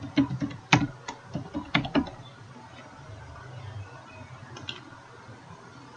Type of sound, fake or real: real